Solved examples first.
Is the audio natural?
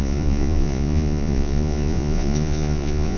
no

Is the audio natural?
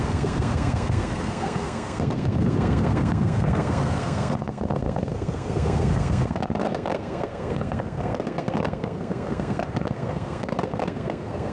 no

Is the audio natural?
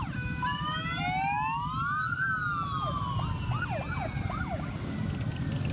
yes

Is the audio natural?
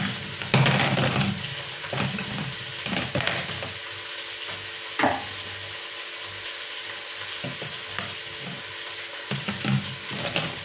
yes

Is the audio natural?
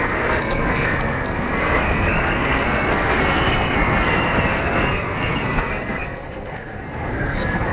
no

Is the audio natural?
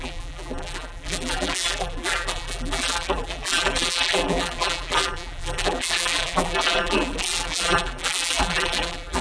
no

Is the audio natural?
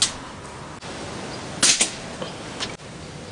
yes